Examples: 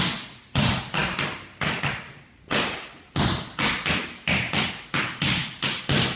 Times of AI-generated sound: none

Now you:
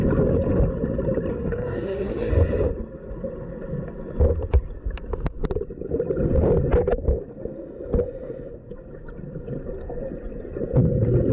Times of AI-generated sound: 1.3-2.3

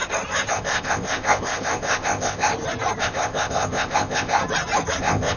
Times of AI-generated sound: 0.5-2.5; 3.0-4.4; 5.0-5.4

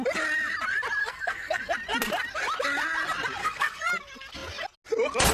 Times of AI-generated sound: 1.0-1.6; 3.4-3.9